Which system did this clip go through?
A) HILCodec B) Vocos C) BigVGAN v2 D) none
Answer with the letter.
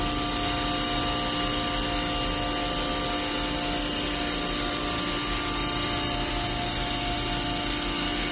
D